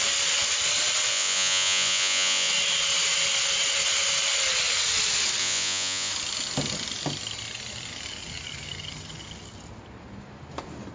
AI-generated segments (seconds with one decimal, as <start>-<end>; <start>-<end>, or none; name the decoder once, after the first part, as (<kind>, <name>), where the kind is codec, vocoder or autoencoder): 1.1-2.5 (vocoder, Vocos); 5.4-6.1